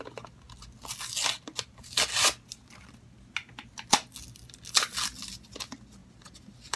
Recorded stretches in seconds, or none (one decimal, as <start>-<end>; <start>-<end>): 0.0-6.8